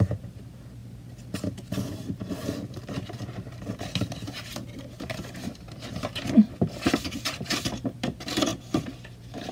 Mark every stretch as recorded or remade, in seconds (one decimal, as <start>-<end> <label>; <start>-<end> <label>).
0.0-0.8 remade; 0.8-1.9 recorded; 1.9-9.5 remade